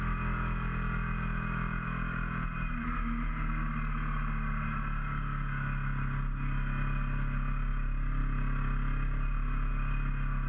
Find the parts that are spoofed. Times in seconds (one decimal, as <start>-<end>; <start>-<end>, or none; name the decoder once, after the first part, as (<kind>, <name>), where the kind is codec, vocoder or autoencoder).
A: none

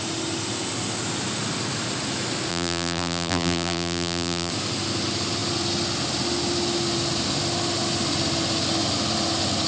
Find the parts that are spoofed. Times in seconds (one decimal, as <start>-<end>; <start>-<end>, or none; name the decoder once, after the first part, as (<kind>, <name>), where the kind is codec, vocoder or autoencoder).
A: 2.5-4.5 (vocoder, BigVGAN v2)

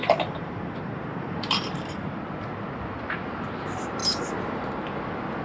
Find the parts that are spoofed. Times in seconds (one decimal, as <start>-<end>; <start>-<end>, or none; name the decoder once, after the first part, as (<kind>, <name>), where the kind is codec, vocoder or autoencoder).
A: 0.0-2.2 (vocoder, BigVGAN v2)

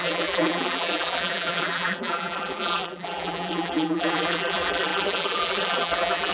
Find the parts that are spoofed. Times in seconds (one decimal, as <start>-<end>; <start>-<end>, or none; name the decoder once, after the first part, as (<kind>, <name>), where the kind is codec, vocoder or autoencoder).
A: 0.0-6.3 (vocoder, BigVGAN v2)

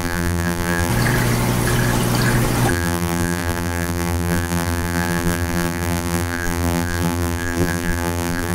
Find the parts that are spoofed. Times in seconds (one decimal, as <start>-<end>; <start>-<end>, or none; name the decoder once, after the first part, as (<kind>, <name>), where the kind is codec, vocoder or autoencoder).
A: 0.0-0.9 (vocoder, BigVGAN v2); 2.7-8.5

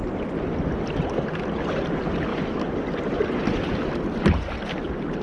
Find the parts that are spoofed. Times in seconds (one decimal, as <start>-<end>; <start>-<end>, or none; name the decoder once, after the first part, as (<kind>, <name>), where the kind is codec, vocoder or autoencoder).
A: none

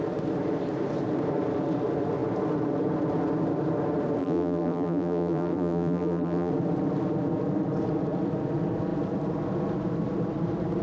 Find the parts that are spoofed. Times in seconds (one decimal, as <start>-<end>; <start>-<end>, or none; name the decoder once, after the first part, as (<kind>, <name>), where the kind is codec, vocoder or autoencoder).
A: 4.2-6.5 (vocoder, BigVGAN v2)